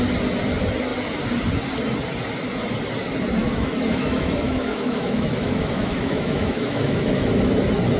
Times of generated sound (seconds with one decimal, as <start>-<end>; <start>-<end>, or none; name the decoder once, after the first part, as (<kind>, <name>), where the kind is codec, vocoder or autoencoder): 3.4-7.5 (autoencoder, DAC-VAE)